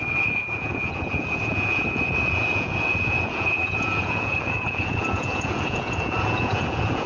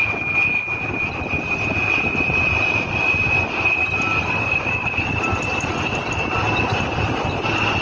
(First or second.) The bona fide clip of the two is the second